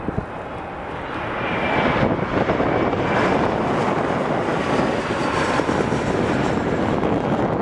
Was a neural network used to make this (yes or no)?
no